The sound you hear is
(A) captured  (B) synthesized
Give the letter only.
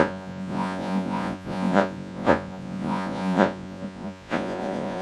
B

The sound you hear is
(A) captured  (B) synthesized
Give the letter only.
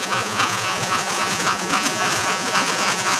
B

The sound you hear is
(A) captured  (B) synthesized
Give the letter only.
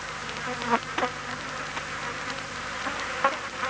A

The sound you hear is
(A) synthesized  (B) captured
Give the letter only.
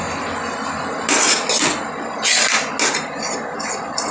B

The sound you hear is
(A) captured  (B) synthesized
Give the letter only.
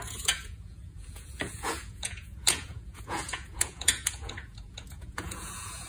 B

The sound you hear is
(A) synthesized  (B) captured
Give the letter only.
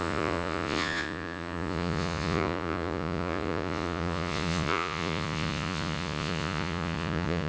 A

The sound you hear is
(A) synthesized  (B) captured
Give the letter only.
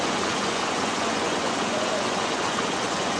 A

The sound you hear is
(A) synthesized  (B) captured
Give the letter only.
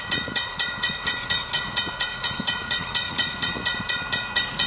A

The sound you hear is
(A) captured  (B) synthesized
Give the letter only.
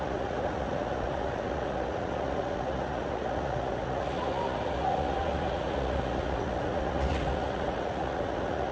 B